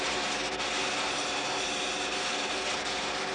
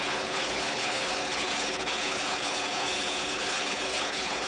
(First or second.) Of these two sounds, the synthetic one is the second